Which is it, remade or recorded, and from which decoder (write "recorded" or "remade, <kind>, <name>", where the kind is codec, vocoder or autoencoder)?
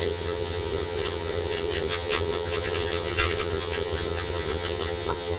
remade, vocoder, HiFi-GAN